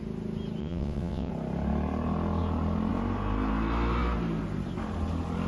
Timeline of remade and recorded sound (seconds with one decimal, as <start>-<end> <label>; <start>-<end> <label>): 0.0-0.6 recorded; 0.6-1.3 remade; 1.3-5.5 recorded